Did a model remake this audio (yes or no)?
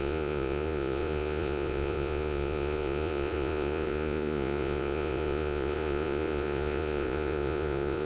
yes